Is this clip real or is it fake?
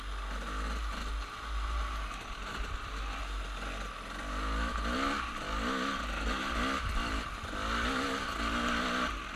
real